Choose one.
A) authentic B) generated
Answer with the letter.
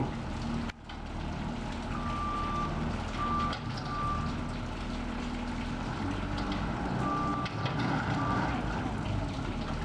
A